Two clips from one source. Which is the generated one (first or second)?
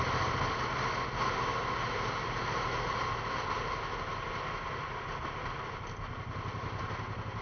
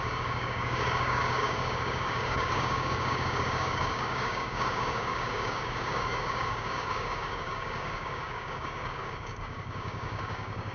second